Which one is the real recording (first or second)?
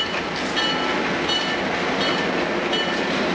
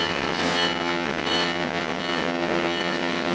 first